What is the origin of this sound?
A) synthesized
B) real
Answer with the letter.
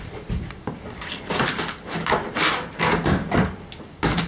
B